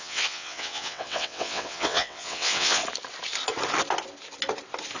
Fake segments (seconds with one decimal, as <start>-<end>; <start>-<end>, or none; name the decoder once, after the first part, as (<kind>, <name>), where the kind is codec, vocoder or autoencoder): 0.0-2.8 (vocoder, WaveNeXt)